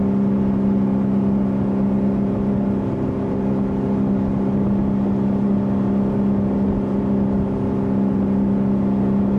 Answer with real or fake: real